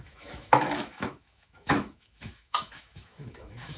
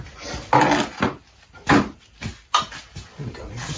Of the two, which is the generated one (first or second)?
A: first